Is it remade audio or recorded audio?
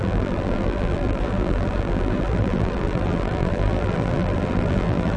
remade